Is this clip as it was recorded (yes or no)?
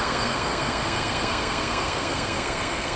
no